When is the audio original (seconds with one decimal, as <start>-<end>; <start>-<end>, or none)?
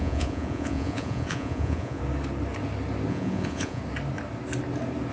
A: 2.0-3.1; 3.8-5.1